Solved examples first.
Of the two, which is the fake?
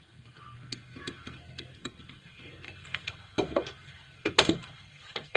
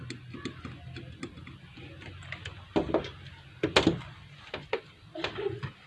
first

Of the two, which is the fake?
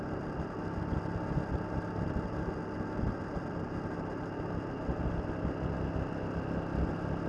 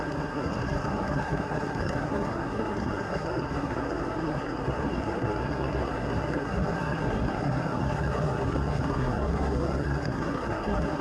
second